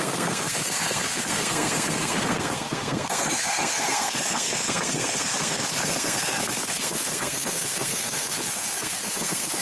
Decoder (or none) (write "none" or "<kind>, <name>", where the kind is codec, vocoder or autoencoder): codec, SNAC